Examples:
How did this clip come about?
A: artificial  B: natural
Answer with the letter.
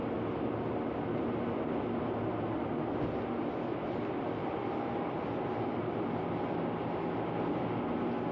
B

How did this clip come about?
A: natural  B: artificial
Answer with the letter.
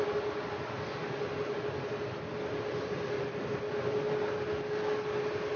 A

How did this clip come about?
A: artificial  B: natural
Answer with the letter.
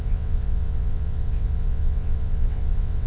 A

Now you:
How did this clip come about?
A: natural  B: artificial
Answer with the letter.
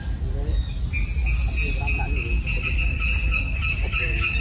A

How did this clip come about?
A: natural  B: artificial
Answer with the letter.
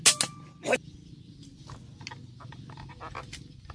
A